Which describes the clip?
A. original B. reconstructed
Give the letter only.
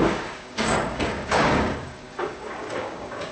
B